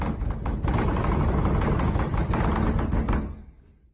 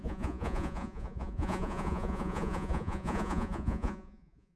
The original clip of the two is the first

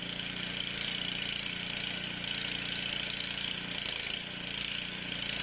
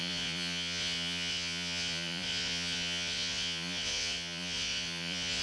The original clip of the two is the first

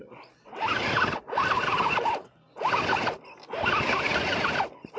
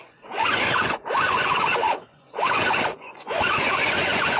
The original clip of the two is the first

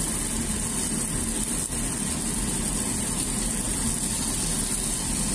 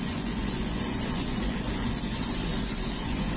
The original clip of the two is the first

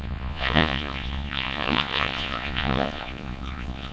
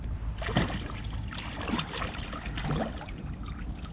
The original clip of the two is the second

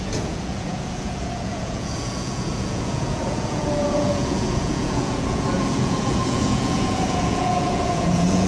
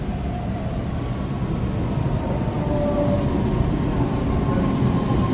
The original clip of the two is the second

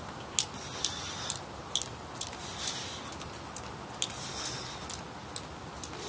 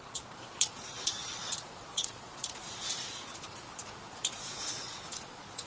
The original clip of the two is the first